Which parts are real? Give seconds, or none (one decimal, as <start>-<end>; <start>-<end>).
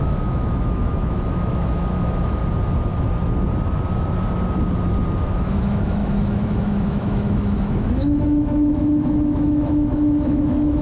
2.4-5.3